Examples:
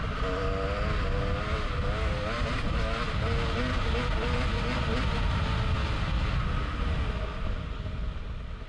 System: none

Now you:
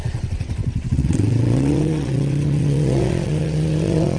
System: vocoder, WaveNeXt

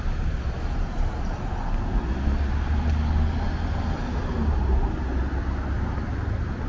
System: none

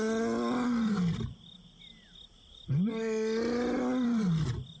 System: none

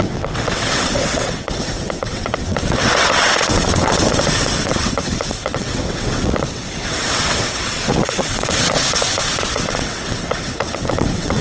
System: vocoder, WaveNeXt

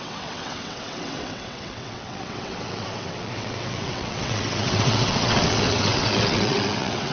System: vocoder, WaveNeXt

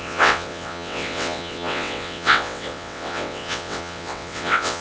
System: vocoder, WaveNeXt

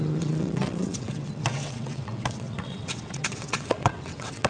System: vocoder, WaveNeXt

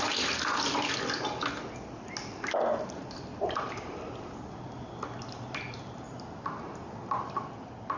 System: none